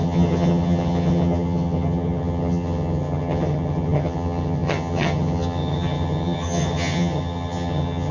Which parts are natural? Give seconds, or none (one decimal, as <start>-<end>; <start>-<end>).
none